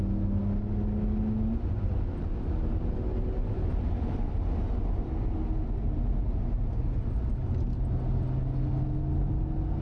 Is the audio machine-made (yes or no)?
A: no